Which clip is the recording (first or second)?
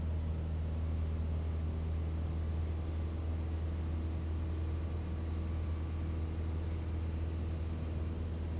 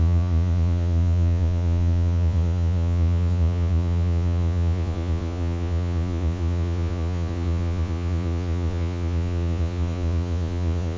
first